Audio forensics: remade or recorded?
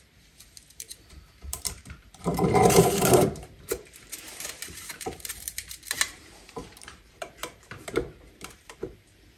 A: remade